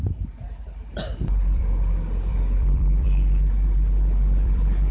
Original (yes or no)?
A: no